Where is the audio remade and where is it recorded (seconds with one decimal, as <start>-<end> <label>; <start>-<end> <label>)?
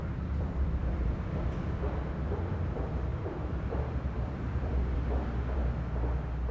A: 0.0-5.6 remade; 5.6-6.5 recorded